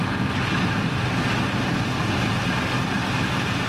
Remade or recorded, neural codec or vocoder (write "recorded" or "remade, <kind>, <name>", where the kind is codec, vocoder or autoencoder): recorded